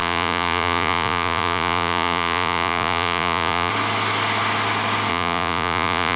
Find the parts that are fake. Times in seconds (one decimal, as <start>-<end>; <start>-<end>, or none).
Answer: 0.0-3.7; 5.1-6.2